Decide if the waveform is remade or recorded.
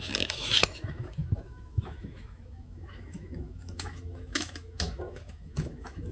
remade